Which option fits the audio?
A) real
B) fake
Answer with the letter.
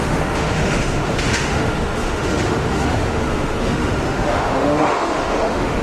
B